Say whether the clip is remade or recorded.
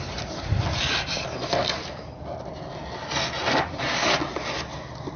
recorded